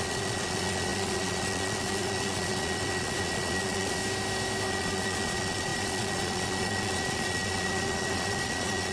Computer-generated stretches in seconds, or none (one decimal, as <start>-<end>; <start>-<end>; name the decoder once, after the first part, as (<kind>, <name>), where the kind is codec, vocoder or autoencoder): 0.0-4.0 (vocoder, Vocos); 4.7-8.9